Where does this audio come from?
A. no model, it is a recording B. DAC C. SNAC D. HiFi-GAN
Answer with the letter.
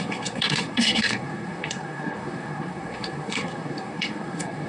C